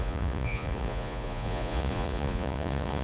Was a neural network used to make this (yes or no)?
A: yes